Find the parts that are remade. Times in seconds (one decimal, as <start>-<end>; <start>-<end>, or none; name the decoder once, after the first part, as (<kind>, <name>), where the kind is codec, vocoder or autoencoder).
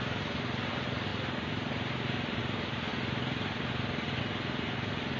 none